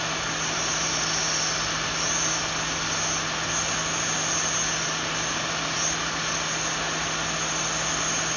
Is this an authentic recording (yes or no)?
yes